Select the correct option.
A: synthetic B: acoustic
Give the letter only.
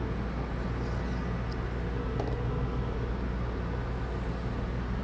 B